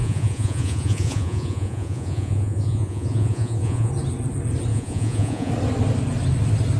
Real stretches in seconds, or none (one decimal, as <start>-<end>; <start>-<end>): 3.9-4.7; 5.5-6.8